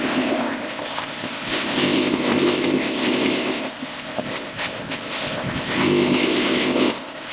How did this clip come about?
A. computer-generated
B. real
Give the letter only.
A